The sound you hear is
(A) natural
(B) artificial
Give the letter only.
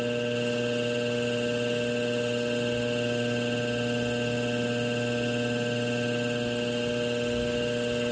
A